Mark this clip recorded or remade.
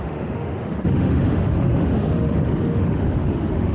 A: remade